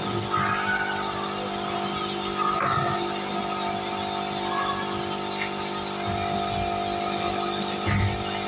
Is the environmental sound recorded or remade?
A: recorded